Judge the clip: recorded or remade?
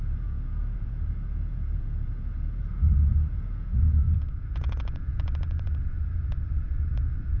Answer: remade